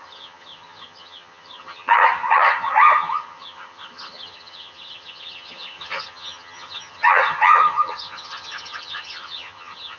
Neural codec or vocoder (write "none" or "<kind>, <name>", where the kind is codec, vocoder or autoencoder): vocoder, HiFi-GAN